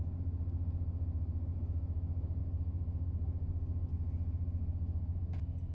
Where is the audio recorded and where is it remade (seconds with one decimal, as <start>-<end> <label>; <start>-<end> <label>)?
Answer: 0.0-5.7 recorded